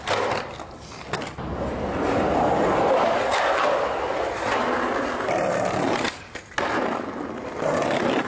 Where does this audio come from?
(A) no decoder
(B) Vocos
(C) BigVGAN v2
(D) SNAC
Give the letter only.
A